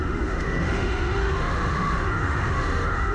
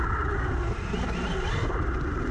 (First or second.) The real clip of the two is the second